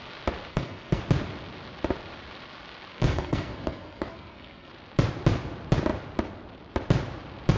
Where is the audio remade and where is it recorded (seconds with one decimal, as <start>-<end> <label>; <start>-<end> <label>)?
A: 0.0-0.5 recorded; 0.5-1.0 remade; 1.0-2.9 recorded; 2.9-4.7 remade; 4.7-7.6 recorded